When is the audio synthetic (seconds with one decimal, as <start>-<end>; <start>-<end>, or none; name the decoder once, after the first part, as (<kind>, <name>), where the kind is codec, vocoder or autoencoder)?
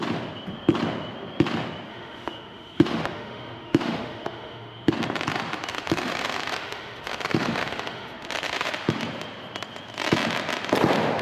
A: 1.9-4.9 (autoencoder, DAC-VAE); 5.7-8.7